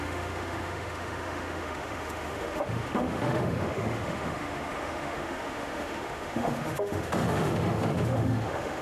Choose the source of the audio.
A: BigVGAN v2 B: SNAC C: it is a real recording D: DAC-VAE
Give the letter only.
D